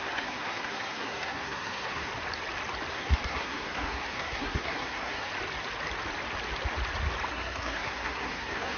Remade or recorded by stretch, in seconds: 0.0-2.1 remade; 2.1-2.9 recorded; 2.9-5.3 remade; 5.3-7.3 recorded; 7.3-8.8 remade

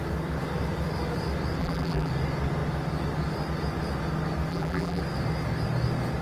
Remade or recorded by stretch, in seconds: 0.0-1.6 recorded; 1.6-2.1 remade; 2.1-4.5 recorded; 4.5-5.0 remade; 5.0-6.2 recorded

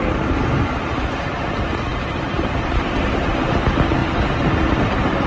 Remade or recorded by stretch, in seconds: 0.0-1.9 recorded; 1.9-3.3 remade; 3.3-5.3 recorded

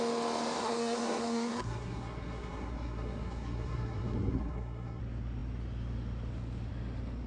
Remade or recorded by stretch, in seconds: 0.0-0.6 recorded; 0.6-5.0 remade; 5.0-7.3 recorded

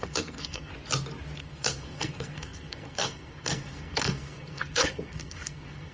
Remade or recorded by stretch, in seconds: 0.0-0.7 remade; 0.7-1.4 recorded; 1.4-5.9 remade

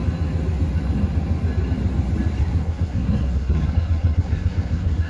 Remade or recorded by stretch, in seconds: 0.0-2.4 recorded; 2.4-5.1 remade

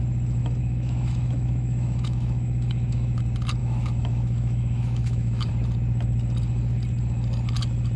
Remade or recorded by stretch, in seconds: 0.0-0.4 recorded; 0.4-3.2 remade; 3.2-3.6 recorded; 3.6-5.5 remade; 5.5-8.0 recorded